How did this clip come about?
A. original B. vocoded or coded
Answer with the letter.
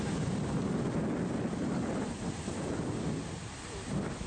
A